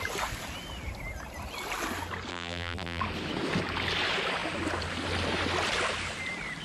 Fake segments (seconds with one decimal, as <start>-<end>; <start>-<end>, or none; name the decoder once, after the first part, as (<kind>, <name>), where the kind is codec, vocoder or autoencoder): 2.3-3.0 (vocoder, BigVGAN v2)